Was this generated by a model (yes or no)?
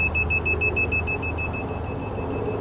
no